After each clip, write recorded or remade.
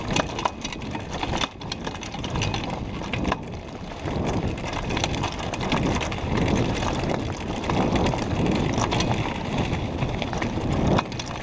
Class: recorded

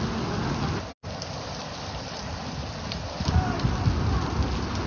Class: recorded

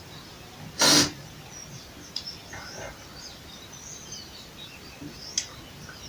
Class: recorded